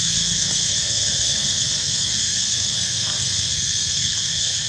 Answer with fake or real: fake